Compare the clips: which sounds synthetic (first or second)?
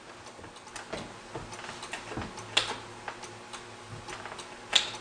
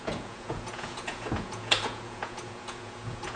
second